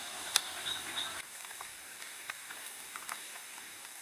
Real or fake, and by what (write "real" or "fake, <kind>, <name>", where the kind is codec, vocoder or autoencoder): fake, codec, DAC